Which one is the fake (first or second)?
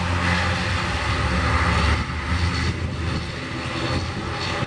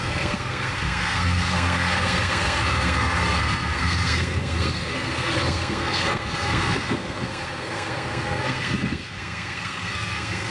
second